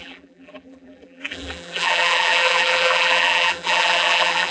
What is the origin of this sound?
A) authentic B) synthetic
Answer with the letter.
B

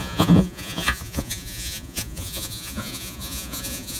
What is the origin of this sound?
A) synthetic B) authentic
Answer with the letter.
A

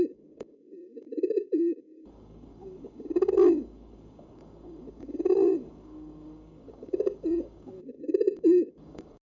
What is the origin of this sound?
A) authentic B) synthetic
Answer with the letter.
B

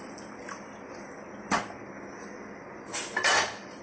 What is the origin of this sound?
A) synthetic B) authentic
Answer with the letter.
B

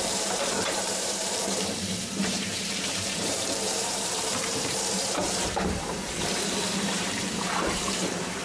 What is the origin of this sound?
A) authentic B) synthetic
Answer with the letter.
B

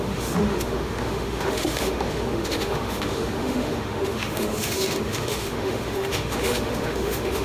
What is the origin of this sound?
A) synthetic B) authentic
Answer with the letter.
A